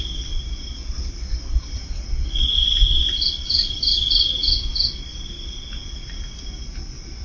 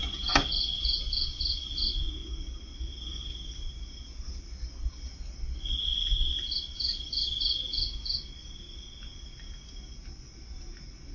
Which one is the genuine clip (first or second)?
second